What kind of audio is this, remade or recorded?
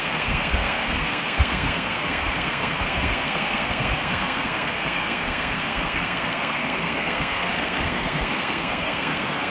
remade